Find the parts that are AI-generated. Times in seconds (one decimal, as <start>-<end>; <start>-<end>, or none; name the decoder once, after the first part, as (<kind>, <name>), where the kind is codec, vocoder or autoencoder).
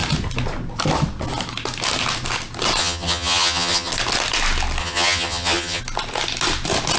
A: 2.8-3.9 (vocoder, HiFi-GAN); 4.8-5.8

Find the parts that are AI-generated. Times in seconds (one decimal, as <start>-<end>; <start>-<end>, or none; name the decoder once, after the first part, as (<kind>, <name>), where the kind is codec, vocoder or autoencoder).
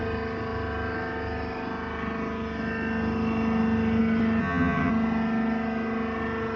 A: 4.4-4.9 (vocoder, HiFi-GAN)